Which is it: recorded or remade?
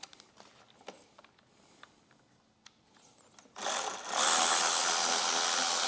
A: recorded